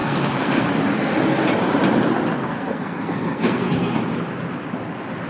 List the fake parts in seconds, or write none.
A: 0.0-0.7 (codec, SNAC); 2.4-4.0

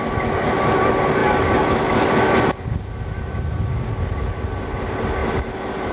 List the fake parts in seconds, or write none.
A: none

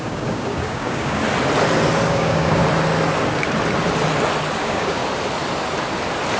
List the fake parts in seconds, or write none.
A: 0.0-1.2 (codec, DAC); 2.1-2.6; 4.6-5.0

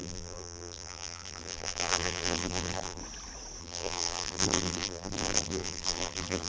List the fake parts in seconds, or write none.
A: 0.0-3.0 (vocoder, BigVGAN v2); 3.6-6.5

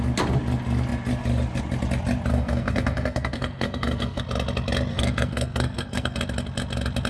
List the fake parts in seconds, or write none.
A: 2.3-4.2 (codec, SNAC); 4.9-6.2

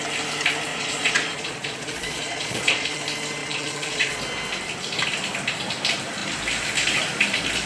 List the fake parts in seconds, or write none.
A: 0.7-3.0 (vocoder, Vocos); 3.4-4.2

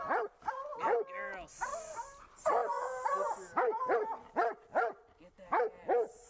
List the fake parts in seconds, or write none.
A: none

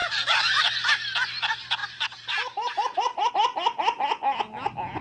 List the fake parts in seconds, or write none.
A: 0.0-0.6 (vocoder, BigVGAN v2); 1.8-3.3